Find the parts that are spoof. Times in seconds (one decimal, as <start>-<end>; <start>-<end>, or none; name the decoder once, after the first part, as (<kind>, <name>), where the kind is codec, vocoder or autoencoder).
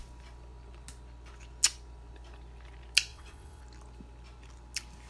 3.1-3.6 (vocoder, WaveNeXt)